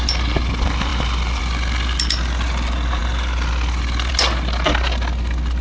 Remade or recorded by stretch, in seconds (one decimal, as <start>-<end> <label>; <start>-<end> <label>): 0.0-5.6 recorded